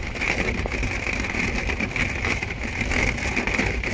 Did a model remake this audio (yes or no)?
no